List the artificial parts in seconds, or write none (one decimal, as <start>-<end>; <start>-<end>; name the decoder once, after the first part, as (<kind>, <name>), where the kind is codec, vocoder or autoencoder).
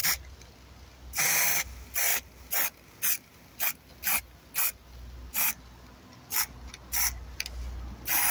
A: none